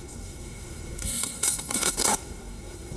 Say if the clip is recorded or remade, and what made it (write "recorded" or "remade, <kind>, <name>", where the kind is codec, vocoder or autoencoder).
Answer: remade, codec, SNAC